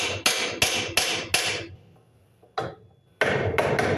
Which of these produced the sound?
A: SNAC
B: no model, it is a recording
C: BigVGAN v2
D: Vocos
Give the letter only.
B